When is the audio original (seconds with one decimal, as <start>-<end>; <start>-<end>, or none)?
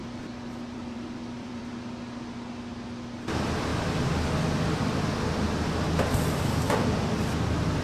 1.7-3.7; 4.8-7.8